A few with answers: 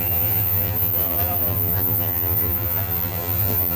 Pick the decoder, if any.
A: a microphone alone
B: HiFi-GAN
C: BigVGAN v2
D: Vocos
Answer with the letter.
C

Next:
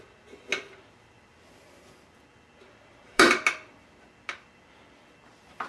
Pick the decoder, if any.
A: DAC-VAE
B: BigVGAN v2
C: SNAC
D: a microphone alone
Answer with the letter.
D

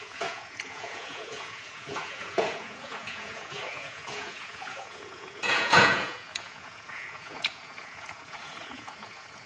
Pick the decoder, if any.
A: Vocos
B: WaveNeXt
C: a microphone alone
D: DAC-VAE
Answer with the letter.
A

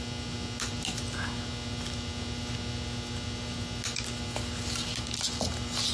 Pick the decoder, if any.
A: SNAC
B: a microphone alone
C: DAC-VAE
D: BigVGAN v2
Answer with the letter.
B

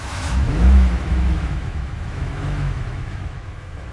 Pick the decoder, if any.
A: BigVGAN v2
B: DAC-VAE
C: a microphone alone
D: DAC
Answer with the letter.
B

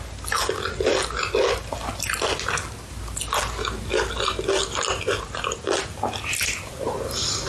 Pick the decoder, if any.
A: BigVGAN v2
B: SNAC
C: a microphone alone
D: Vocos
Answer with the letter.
C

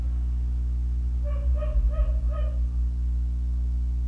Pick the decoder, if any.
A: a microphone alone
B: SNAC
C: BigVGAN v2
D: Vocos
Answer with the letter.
A